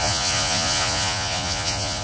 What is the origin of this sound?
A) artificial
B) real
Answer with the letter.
A